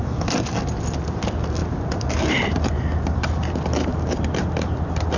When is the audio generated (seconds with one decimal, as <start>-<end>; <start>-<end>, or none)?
1.6-4.7